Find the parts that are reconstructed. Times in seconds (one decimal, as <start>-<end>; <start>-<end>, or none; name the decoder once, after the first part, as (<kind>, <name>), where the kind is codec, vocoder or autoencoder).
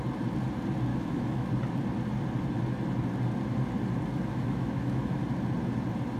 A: 0.9-1.5 (autoencoder, DAC-VAE); 4.3-5.2